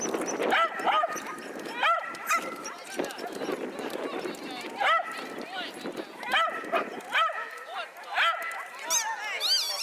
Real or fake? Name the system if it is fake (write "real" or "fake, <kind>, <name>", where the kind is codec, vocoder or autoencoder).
real